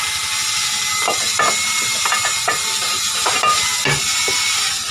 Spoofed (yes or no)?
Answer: no